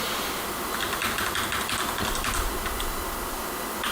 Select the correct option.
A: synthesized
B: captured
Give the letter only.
B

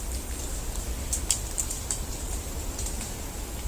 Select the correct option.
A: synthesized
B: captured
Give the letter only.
B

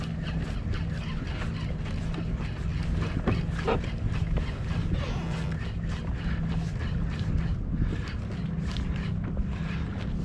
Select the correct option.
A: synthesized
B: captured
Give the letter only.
B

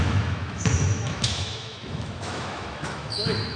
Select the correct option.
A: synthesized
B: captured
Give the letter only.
A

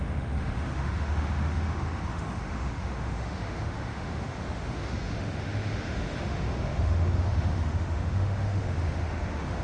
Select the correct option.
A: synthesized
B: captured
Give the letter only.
A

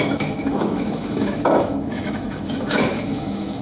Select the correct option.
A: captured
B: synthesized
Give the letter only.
B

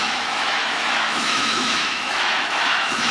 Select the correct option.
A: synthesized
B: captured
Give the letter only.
A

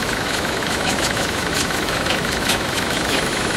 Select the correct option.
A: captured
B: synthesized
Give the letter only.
B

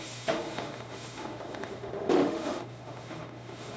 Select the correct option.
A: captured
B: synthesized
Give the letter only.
B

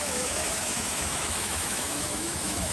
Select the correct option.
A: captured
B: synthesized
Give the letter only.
B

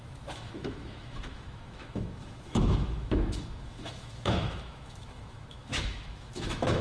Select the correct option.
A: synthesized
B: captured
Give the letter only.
A